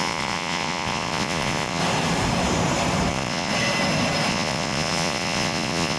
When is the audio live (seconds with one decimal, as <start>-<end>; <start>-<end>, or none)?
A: 1.8-3.1; 3.5-4.3